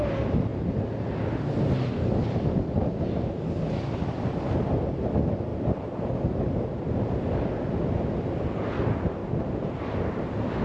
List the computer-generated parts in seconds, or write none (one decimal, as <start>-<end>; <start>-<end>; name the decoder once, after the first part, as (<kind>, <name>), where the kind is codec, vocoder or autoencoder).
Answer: 5.5-6.4 (vocoder, BigVGAN v2); 9.2-9.8